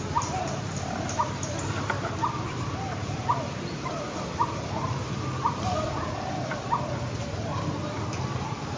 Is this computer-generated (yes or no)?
yes